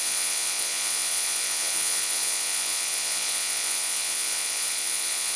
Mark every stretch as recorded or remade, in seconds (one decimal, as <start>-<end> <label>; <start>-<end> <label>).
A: 0.0-5.4 remade